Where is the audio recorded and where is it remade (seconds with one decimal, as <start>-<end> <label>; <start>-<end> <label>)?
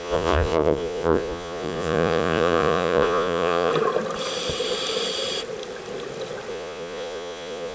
0.0-3.7 remade; 3.7-6.5 recorded; 6.5-7.7 remade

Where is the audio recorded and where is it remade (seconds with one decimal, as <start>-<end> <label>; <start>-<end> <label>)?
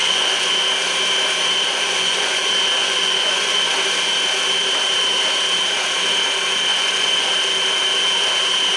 0.0-0.5 remade; 0.5-1.7 recorded; 1.7-2.4 remade; 2.4-2.8 recorded; 2.8-3.7 remade; 3.7-6.7 recorded; 6.7-7.3 remade; 7.3-8.8 recorded